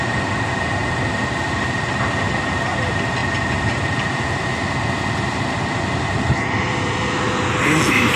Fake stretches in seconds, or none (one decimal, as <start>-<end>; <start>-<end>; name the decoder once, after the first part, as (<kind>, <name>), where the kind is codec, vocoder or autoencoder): none